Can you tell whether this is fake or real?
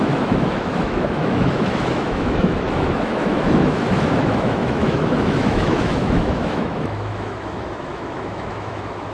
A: fake